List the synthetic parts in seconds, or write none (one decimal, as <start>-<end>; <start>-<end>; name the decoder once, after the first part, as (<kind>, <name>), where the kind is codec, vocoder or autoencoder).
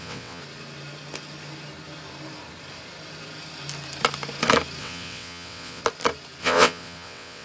0.0-0.4 (vocoder, WaveNeXt); 4.8-5.8; 6.4-7.4